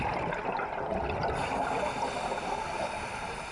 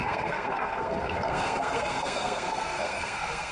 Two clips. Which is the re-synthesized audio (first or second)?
second